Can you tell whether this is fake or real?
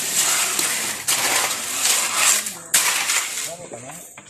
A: real